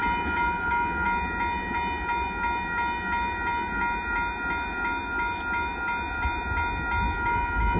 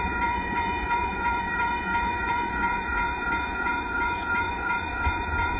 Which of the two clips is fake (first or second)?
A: second